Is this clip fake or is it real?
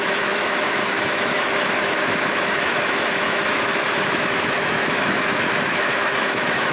fake